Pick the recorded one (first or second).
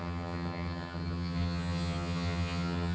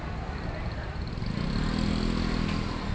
second